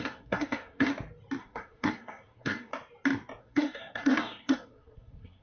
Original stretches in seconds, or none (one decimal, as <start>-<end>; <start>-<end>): 0.9-1.4; 2.7-3.4